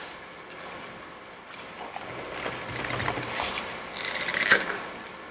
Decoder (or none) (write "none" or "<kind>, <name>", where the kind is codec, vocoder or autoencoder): none